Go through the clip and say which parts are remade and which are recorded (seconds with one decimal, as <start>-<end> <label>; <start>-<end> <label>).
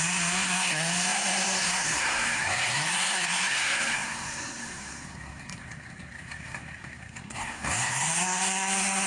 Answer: 0.0-9.1 remade